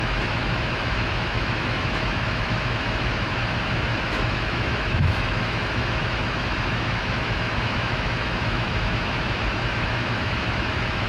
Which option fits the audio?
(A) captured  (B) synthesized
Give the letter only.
B